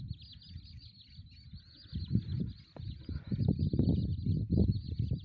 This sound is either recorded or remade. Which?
recorded